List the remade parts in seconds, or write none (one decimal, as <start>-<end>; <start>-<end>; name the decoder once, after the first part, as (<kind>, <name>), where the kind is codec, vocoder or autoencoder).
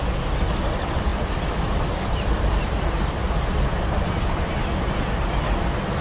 1.1-4.7 (vocoder, BigVGAN v2)